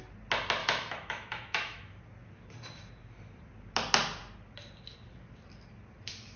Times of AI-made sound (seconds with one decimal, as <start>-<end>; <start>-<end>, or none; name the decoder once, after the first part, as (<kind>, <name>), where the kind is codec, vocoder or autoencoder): 0.6-2.0 (autoencoder, DAC-VAE)